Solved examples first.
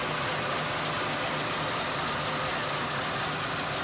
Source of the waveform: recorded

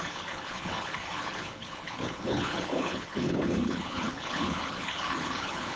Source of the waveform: remade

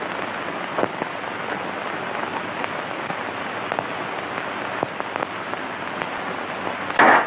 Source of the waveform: recorded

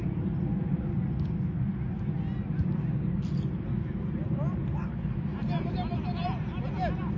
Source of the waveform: recorded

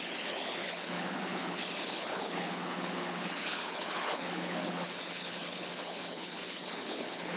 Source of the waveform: remade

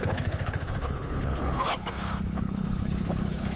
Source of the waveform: remade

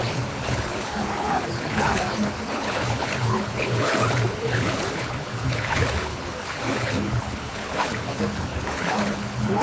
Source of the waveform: remade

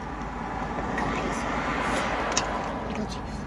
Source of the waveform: recorded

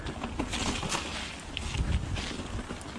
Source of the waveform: recorded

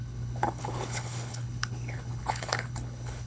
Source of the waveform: remade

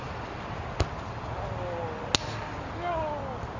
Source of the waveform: recorded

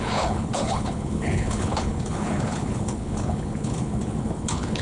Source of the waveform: remade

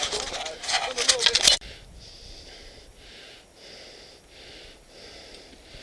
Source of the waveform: recorded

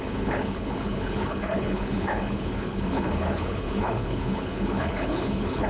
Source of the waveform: remade